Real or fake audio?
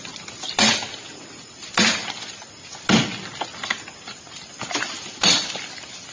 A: real